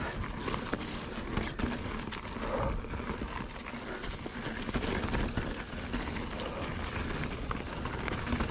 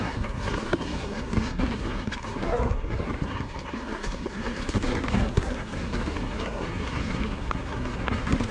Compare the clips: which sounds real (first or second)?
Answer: first